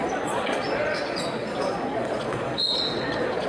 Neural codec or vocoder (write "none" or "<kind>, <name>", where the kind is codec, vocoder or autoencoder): vocoder, Vocos